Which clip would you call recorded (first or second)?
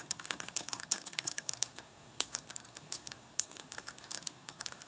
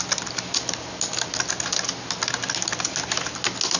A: second